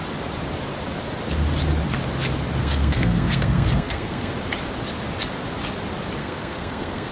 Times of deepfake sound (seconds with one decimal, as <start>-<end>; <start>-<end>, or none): 2.6-4.3; 6.2-7.1